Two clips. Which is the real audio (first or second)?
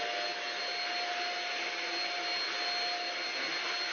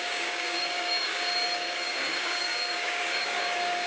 first